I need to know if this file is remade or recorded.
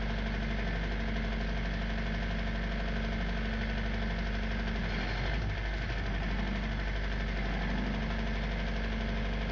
recorded